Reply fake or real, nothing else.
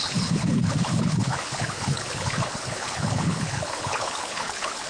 fake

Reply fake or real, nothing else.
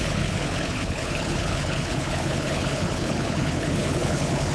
fake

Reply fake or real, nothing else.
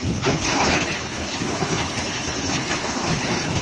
fake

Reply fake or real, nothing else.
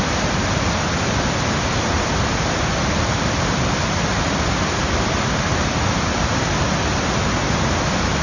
real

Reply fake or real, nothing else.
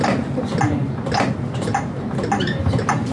real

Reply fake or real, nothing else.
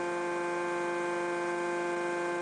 real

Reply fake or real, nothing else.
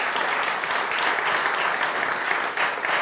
real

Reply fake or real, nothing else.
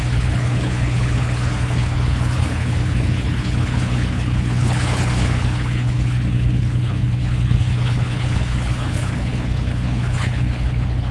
fake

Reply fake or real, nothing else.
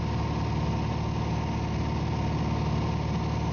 real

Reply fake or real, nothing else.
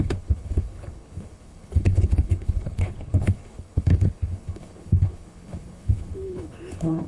fake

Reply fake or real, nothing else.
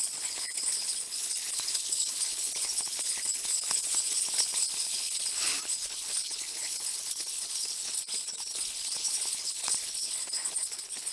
fake